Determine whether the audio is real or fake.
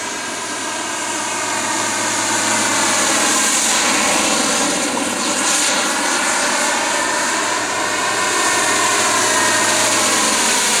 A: real